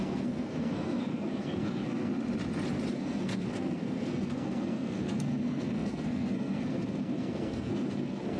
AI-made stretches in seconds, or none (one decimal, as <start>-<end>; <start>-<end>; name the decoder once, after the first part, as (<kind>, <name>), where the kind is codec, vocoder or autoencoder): 0.0-2.1 (codec, SNAC); 2.9-8.4